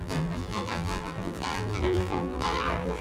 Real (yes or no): no